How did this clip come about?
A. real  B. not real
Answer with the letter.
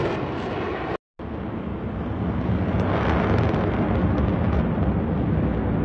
A